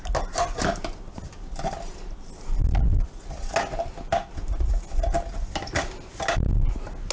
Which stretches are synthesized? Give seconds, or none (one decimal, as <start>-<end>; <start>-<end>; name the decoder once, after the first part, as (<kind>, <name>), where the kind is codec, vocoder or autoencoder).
none